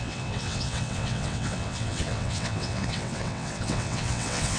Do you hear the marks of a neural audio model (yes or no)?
yes